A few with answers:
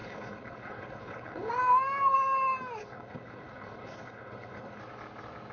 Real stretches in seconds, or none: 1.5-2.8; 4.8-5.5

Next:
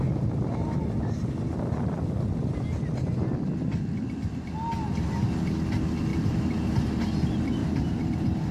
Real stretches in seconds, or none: 0.0-6.1; 7.1-7.6

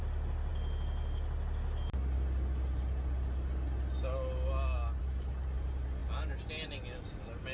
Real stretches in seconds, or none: 0.0-7.5

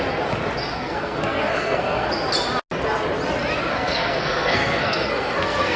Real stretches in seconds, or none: 0.0-0.7; 2.1-3.7

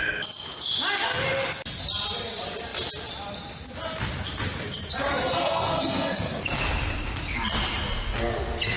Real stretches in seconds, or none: 0.0-5.1; 6.2-8.8

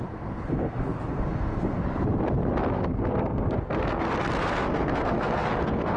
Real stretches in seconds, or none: 1.8-2.7

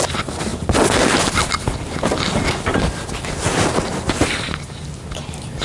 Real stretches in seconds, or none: 0.0-5.6

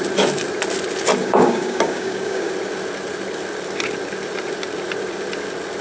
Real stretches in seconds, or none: 0.0-1.2; 2.5-5.8